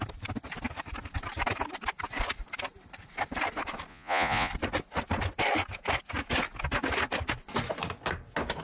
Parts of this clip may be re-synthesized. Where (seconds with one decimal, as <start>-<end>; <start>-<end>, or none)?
3.9-4.5